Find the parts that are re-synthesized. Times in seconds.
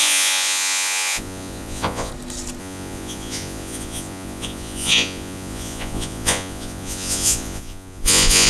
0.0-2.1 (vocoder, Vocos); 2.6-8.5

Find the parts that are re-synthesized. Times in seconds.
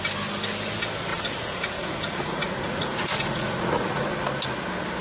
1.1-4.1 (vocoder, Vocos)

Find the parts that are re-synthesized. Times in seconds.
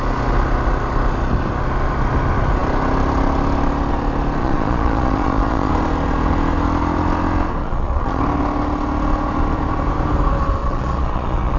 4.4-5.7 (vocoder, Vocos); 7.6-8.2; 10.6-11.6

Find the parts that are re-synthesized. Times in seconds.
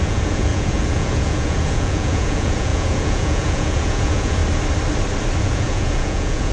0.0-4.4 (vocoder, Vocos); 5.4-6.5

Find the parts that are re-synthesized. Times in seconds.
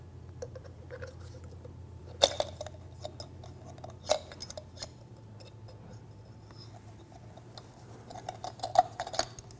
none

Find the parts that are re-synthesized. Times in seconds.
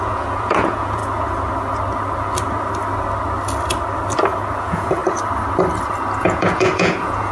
0.0-1.0 (vocoder, Vocos); 4.6-5.0; 6.2-7.3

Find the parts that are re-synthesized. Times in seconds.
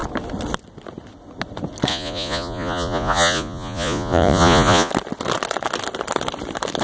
1.9-4.9 (vocoder, Vocos)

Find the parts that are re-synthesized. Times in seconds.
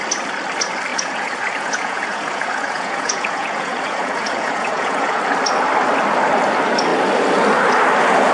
0.9-5.2 (vocoder, Vocos)